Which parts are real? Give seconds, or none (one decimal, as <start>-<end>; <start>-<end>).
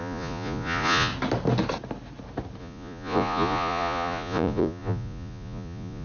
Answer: 1.1-2.6